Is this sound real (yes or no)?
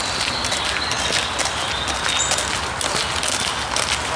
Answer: yes